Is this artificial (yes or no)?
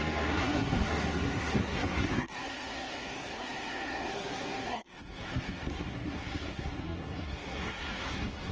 yes